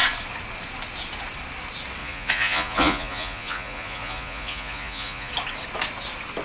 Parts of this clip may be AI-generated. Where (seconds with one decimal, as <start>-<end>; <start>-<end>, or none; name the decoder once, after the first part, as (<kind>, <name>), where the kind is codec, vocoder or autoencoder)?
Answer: 2.0-5.3 (vocoder, Vocos)